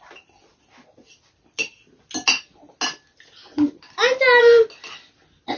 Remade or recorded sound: recorded